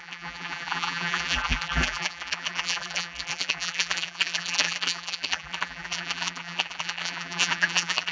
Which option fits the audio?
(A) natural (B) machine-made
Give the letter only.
B